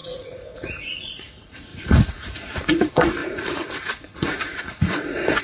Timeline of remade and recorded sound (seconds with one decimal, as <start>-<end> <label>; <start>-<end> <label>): 0.0-5.4 remade